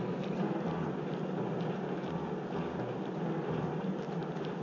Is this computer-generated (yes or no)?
no